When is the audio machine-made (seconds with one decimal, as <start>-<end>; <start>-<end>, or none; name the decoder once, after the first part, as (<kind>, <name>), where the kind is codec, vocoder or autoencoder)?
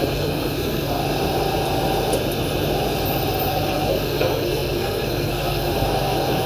0.0-1.0 (codec, SNAC); 3.5-6.5